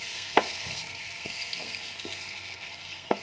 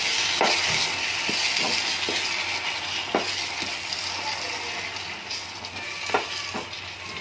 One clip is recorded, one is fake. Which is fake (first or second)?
first